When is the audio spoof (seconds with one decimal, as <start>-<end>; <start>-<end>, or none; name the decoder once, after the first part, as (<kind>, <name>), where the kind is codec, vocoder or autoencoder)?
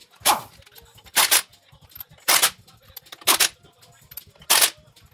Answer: none